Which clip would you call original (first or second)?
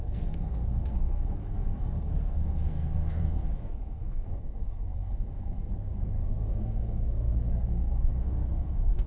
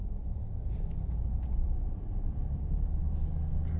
second